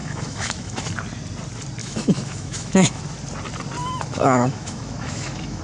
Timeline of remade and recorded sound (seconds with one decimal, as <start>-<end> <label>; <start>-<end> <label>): 0.0-0.8 remade; 0.8-1.8 recorded; 1.8-3.0 remade; 3.0-3.8 recorded; 3.8-5.6 remade